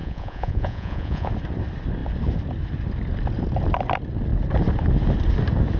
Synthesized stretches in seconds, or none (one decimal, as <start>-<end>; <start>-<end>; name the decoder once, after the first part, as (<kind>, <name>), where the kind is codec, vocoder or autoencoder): 0.0-1.3 (vocoder, Vocos)